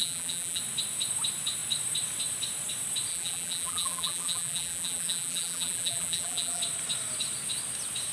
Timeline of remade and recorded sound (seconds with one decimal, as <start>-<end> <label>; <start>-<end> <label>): 0.0-0.6 remade; 0.6-3.1 recorded; 3.1-6.6 remade; 6.6-8.1 recorded